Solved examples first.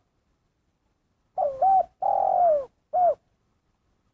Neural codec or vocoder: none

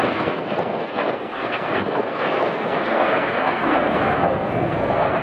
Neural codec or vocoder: codec, SNAC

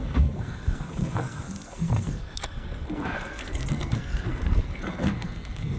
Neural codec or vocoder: codec, SNAC